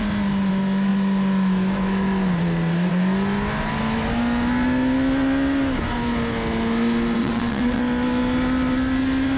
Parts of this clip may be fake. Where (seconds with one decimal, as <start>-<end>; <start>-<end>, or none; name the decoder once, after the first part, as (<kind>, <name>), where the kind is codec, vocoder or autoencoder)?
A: 7.2-7.8 (vocoder, WaveNeXt)